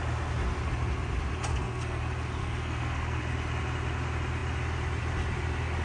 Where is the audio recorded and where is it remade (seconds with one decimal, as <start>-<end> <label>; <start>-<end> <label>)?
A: 0.0-1.5 recorded; 1.5-2.0 remade; 2.0-2.4 recorded; 2.4-3.2 remade; 3.2-5.8 recorded